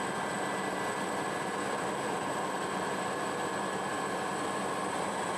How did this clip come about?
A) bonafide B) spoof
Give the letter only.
A